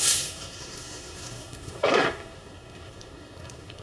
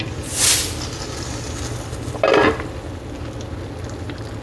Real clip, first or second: second